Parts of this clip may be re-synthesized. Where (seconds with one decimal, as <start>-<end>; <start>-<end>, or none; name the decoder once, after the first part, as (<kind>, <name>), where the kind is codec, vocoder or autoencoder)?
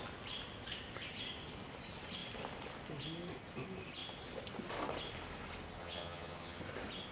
5.8-6.6 (vocoder, HiFi-GAN)